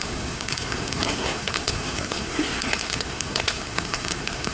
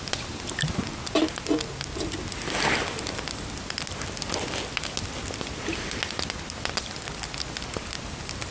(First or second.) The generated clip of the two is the first